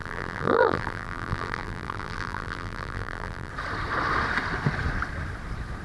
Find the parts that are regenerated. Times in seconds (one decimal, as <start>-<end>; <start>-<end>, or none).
0.0-3.5

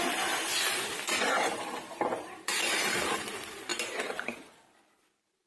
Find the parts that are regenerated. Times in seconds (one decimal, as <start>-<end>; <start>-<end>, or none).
0.0-5.5